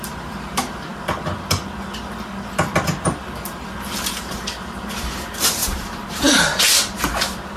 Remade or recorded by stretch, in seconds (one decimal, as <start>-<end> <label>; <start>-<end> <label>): 0.0-0.9 remade; 0.9-4.1 recorded; 4.1-7.6 remade